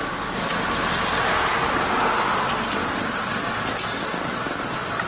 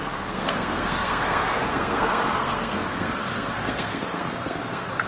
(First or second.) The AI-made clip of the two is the second